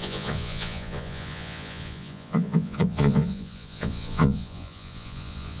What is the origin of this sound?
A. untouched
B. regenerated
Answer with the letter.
B